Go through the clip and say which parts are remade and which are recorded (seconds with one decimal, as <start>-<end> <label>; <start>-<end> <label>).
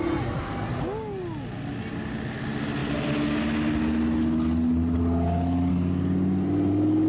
0.0-7.1 recorded